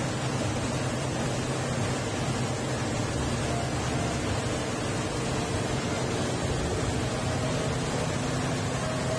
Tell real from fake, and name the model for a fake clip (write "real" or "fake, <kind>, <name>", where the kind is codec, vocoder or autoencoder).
real